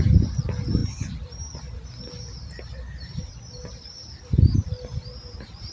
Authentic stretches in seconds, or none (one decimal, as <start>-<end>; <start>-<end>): 0.0-5.7

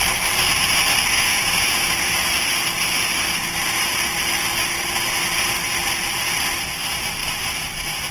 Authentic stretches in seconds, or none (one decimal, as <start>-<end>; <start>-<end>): 0.0-1.3; 2.1-8.1

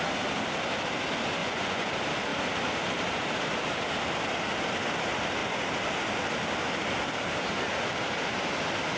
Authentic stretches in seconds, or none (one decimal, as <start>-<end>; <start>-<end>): 0.0-1.4; 1.9-9.0

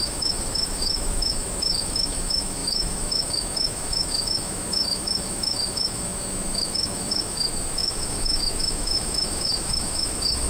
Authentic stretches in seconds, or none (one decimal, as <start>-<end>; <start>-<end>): none

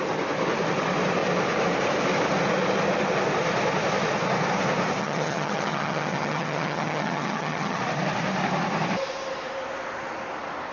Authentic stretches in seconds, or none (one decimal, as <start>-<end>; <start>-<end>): 0.0-5.0; 7.8-10.7

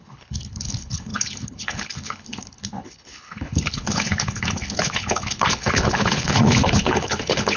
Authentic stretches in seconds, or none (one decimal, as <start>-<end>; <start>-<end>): none

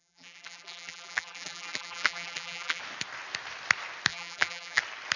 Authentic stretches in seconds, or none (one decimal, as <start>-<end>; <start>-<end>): 2.8-4.1; 4.8-5.2

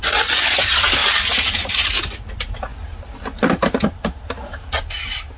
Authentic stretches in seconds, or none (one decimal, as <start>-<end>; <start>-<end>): 0.0-5.4